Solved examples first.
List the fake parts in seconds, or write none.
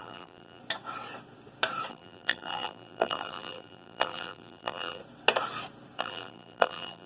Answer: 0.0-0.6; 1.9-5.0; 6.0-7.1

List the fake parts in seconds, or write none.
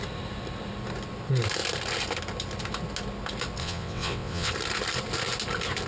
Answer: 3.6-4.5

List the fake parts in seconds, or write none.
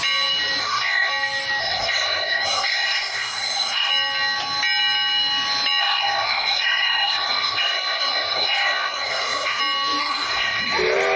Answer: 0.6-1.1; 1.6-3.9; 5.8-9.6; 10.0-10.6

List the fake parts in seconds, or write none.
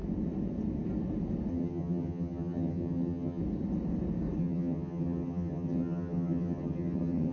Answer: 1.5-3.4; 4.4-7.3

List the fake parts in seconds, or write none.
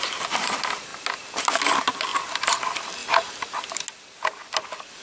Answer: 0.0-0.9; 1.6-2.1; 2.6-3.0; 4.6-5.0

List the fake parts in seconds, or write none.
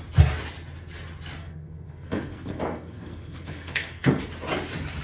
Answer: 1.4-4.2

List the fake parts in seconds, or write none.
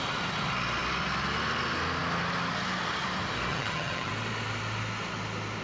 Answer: 3.5-4.1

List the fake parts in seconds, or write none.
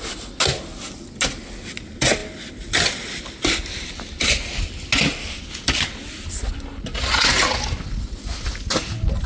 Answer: none